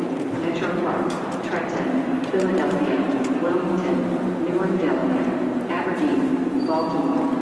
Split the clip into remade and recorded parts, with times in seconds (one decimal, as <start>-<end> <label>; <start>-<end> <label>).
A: 0.0-5.0 remade; 5.0-5.7 recorded; 5.7-7.4 remade